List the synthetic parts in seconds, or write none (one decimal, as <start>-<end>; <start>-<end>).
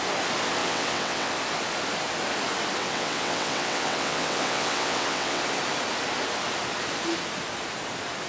0.6-1.3; 2.8-5.4